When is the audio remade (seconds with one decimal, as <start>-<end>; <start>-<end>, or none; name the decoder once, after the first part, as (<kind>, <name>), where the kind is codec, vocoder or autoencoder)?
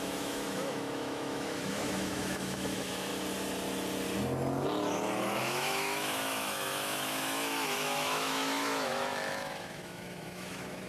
0.0-3.1 (autoencoder, DAC-VAE); 5.4-10.9